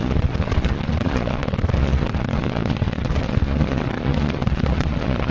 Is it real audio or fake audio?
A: fake